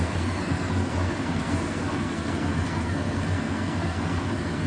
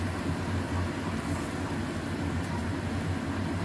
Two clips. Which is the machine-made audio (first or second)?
first